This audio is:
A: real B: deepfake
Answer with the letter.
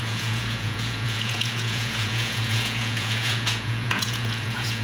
B